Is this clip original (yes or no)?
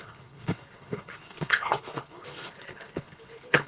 no